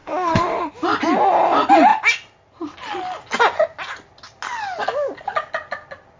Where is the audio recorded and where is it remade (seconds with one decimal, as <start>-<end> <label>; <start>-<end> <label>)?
0.0-0.7 remade; 0.7-6.2 recorded